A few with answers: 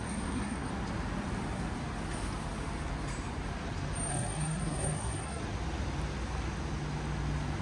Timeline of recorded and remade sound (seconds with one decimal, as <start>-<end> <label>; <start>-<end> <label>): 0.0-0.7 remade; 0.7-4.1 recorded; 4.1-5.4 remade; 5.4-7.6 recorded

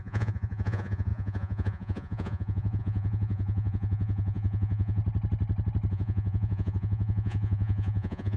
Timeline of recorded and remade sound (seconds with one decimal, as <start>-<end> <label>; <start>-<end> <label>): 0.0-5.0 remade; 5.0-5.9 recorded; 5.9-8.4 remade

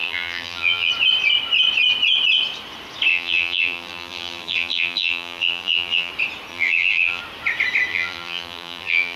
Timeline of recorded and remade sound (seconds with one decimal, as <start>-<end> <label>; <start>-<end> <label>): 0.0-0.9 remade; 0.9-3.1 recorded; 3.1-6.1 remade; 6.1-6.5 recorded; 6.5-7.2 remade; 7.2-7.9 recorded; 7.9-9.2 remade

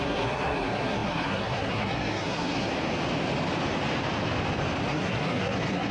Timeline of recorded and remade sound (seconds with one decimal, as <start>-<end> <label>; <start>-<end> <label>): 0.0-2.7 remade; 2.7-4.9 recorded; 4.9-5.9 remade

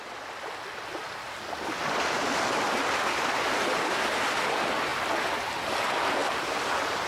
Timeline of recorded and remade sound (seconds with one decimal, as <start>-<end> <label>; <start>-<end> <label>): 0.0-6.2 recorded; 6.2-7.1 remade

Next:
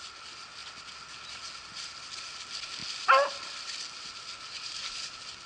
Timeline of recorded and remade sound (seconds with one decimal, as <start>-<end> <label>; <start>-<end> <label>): 0.0-5.5 recorded

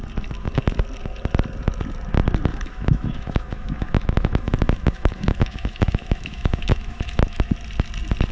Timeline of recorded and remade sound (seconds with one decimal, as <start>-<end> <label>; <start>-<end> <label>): 0.0-2.5 recorded; 2.5-7.5 remade; 7.5-8.3 recorded

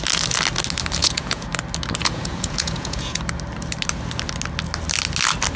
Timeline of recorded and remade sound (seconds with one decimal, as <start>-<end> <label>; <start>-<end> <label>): 0.0-1.0 recorded; 1.0-1.5 remade; 1.5-2.0 recorded; 2.0-3.2 remade; 3.2-5.6 recorded